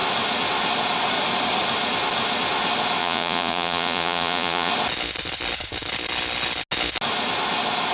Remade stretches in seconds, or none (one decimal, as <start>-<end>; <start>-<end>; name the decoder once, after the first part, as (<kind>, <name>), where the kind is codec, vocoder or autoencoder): 3.0-4.7 (vocoder, Vocos)